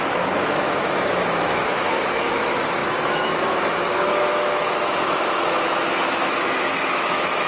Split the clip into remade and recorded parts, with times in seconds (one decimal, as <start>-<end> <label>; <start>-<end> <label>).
0.0-7.5 remade